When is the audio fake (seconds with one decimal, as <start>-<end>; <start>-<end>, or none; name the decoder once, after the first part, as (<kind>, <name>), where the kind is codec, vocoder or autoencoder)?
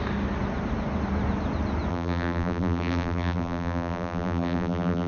1.9-5.1 (vocoder, BigVGAN v2)